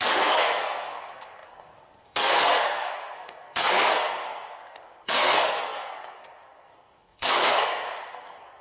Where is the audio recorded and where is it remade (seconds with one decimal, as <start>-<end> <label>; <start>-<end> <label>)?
0.0-8.6 remade